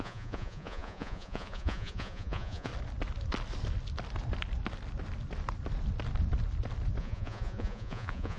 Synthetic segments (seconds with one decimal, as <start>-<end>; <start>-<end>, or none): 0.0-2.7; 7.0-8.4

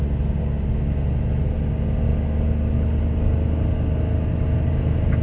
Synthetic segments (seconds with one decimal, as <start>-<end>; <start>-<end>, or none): none

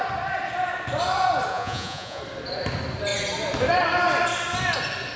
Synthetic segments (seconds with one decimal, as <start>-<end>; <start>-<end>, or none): 1.5-2.2

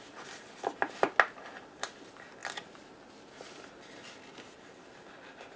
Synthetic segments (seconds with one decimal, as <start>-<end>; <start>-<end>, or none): none